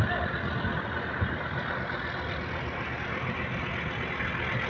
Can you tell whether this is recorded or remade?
recorded